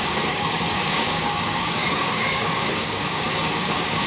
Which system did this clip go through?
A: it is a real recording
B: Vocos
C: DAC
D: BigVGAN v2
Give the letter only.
C